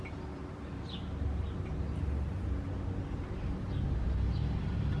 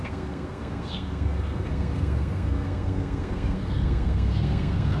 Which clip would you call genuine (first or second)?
first